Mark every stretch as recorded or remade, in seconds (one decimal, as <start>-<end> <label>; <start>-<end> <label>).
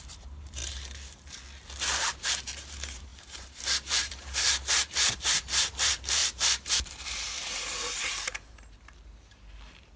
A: 0.0-0.6 remade; 0.6-2.1 recorded; 2.1-10.0 remade